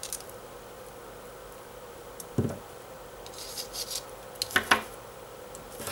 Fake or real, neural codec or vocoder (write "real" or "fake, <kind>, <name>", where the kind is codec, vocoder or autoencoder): real